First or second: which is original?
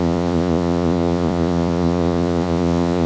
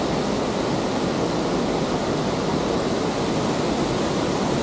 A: second